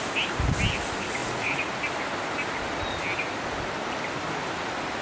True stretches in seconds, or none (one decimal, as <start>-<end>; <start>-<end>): 0.0-1.2; 1.7-5.0